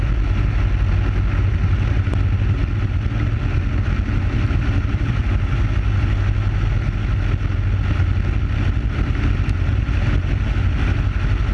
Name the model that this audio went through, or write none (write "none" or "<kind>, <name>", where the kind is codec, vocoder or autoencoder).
none